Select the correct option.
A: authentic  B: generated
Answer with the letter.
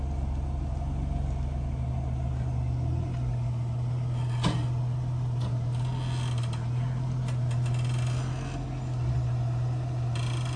A